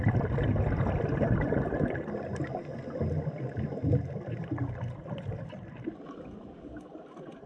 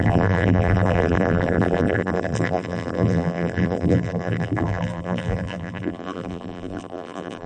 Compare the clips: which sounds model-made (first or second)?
second